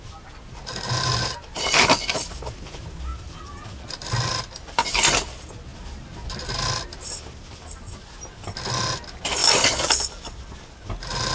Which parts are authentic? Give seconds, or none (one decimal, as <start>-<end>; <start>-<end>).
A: 0.0-3.1; 4.1-9.4; 10.3-11.3